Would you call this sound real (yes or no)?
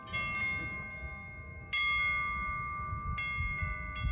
yes